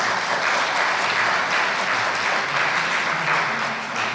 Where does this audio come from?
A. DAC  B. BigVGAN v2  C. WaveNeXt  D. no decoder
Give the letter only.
D